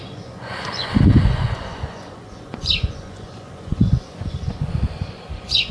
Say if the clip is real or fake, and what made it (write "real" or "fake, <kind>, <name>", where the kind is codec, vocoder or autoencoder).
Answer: fake, vocoder, Vocos